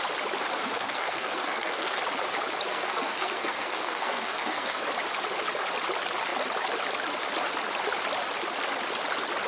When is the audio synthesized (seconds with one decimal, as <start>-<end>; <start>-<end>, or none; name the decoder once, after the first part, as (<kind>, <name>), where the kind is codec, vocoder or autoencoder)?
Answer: 0.6-2.0 (codec, SNAC); 2.7-4.8